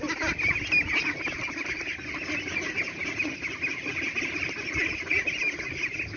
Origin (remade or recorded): recorded